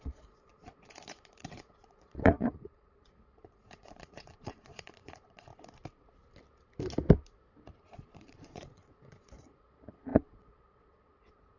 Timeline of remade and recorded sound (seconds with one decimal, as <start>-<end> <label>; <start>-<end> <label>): 0.0-5.5 remade; 5.5-7.8 recorded; 7.8-11.6 remade